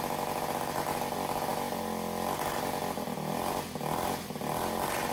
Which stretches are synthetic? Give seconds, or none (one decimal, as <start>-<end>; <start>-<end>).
none